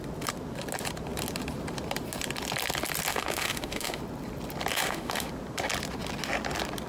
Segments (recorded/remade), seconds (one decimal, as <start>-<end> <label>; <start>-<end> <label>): 0.0-3.1 recorded; 3.1-4.0 remade; 4.0-4.7 recorded; 4.7-5.3 remade; 5.3-6.9 recorded